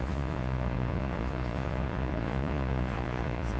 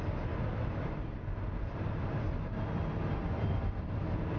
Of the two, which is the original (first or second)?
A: second